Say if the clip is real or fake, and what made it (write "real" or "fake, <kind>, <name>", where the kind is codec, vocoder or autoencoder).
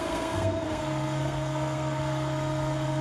fake, codec, SNAC